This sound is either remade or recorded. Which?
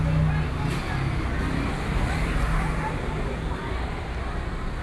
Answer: recorded